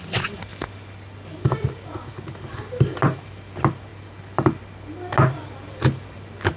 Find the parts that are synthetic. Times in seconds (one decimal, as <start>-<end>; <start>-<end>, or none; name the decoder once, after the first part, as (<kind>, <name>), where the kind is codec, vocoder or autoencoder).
3.9-4.6 (vocoder, BigVGAN v2)